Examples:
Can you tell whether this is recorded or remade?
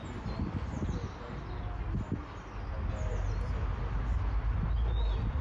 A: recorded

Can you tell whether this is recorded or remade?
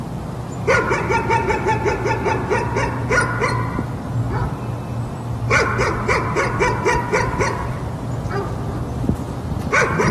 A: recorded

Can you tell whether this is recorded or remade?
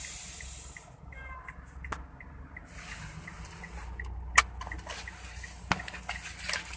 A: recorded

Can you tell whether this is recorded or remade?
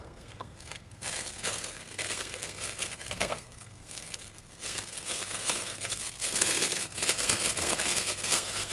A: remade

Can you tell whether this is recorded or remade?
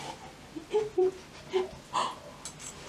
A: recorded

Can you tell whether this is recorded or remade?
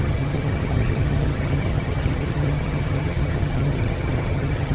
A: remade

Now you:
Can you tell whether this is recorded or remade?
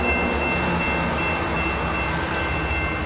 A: recorded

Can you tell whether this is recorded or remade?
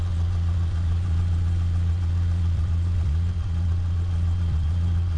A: remade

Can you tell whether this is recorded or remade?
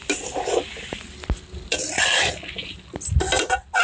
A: recorded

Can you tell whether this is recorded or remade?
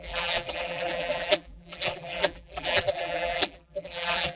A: remade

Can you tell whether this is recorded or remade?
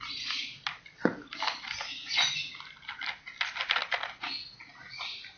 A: recorded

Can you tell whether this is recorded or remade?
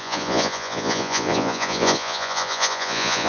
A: remade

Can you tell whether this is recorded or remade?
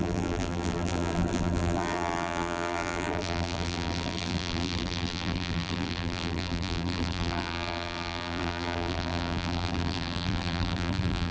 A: remade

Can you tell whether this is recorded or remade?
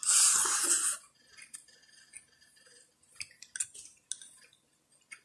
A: recorded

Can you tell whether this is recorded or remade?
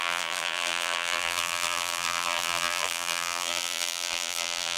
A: remade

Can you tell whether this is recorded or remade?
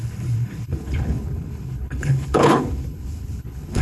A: remade